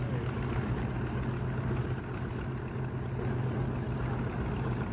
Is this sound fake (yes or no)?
no